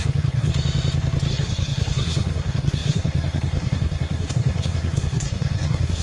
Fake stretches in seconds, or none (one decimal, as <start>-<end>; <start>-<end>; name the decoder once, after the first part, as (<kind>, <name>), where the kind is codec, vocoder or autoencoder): 0.0-0.5 (codec, SNAC); 1.3-6.0